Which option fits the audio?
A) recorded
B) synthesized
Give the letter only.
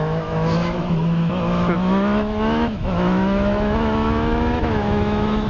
B